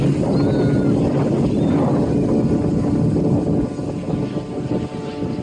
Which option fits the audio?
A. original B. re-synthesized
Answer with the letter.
A